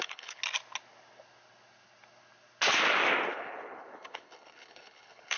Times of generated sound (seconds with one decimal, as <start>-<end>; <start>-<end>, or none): 0.0-0.4; 3.3-5.4